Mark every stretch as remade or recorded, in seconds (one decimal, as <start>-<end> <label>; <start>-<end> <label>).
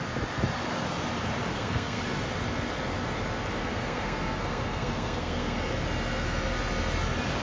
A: 0.0-1.5 recorded; 1.5-2.0 remade; 2.0-3.6 recorded; 3.6-5.6 remade; 5.6-7.4 recorded